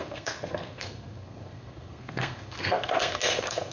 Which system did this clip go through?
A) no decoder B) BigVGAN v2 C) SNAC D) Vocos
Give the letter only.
C